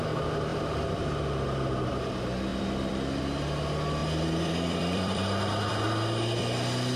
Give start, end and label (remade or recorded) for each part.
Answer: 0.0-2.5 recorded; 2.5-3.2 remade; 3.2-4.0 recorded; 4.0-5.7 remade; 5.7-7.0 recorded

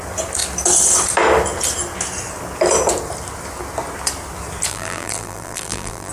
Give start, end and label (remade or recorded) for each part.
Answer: 0.0-4.7 recorded; 4.7-6.1 remade

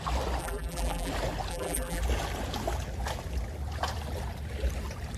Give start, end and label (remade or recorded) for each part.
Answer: 0.0-0.4 recorded; 0.4-1.1 remade; 1.1-1.5 recorded; 1.5-2.0 remade; 2.0-5.2 recorded

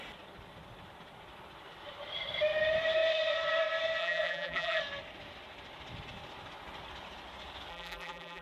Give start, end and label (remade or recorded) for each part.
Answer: 0.0-4.0 recorded; 4.0-4.8 remade; 4.8-7.7 recorded; 7.7-8.4 remade